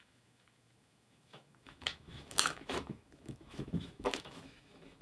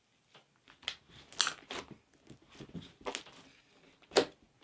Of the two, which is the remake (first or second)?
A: first